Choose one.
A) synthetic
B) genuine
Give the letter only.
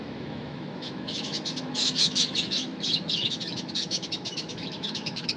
A